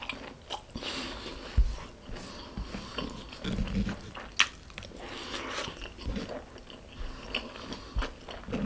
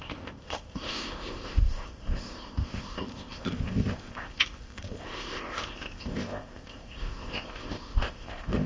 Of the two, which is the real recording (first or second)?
first